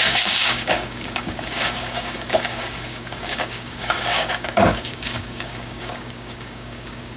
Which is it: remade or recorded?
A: remade